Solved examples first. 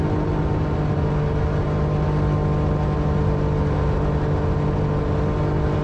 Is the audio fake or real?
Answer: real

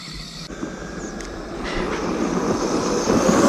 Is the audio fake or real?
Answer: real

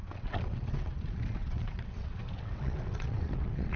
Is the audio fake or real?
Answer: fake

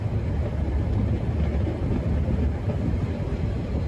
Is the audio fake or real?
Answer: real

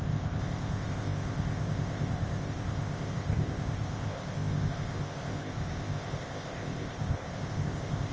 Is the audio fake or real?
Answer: fake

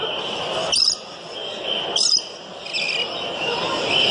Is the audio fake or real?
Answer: real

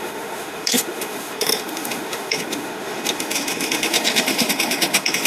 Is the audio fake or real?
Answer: fake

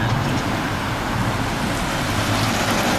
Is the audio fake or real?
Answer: real